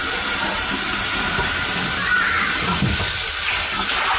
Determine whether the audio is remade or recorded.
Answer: remade